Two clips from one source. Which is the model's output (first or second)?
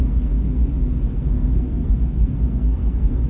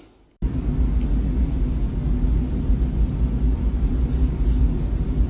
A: first